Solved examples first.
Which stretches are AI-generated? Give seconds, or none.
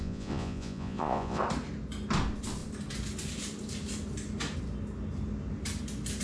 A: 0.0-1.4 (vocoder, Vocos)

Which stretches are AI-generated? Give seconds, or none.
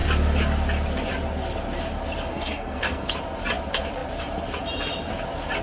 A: 2.3-3.1 (codec, SNAC)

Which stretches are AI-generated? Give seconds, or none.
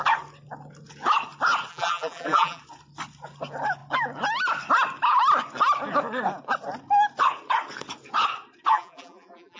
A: 1.7-2.6 (vocoder, BigVGAN v2); 8.7-9.6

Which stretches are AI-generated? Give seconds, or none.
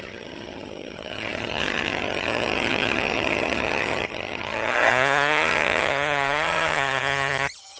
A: 0.0-7.8 (vocoder, HiFi-GAN)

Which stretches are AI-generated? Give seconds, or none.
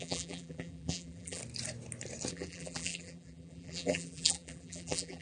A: 0.0-1.4 (vocoder, BigVGAN v2); 2.3-5.2